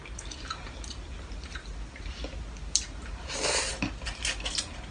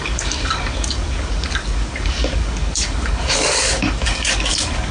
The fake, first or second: second